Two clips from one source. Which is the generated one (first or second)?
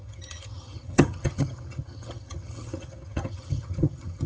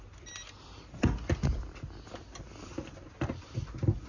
first